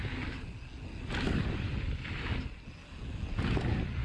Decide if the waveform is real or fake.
real